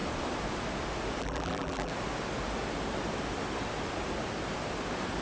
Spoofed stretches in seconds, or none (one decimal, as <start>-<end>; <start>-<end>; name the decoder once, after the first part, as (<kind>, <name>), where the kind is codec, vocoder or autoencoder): 1.2-1.9 (vocoder, BigVGAN v2)